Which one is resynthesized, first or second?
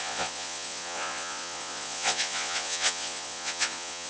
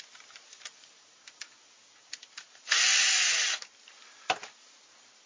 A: first